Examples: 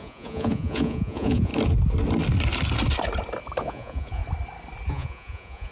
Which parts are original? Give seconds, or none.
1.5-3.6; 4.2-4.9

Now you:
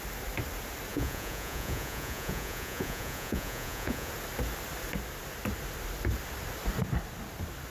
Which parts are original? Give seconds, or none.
0.0-0.9; 4.1-7.7

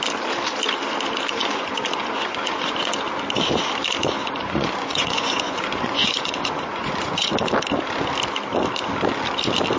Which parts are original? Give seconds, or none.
0.0-1.4; 2.9-4.2; 7.3-9.8

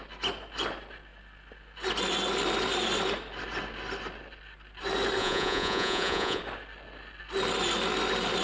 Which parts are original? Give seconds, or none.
0.0-5.2; 6.4-8.4

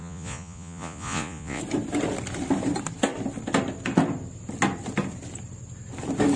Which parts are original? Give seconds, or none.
1.6-6.4

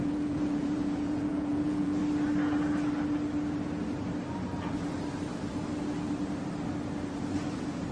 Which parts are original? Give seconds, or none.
2.0-7.9

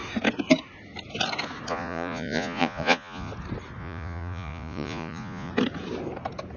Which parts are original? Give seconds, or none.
0.0-1.7; 3.3-3.8; 5.5-6.6